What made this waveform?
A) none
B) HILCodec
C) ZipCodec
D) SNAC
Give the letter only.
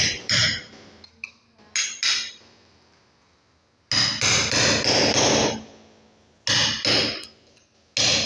A